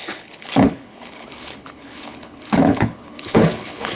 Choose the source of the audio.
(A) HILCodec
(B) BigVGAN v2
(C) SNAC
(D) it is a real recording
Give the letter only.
A